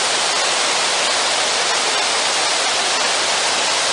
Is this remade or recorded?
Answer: recorded